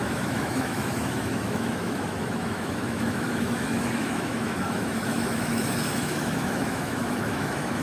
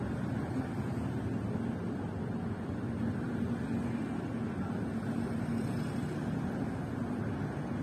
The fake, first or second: first